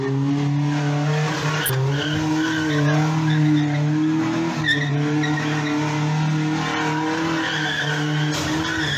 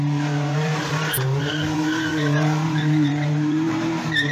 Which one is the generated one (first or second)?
second